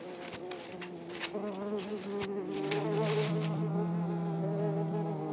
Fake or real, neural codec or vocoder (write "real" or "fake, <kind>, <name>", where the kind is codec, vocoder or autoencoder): fake, vocoder, BigVGAN v2